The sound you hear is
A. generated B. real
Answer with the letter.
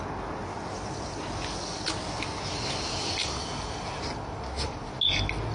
B